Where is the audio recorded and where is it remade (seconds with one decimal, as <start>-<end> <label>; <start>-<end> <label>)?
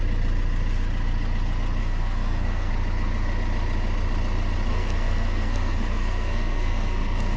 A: 0.0-1.8 recorded; 1.8-2.7 remade; 2.7-4.7 recorded; 4.7-7.4 remade